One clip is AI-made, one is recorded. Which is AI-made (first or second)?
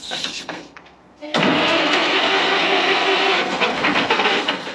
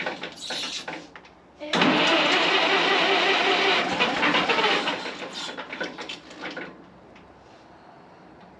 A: first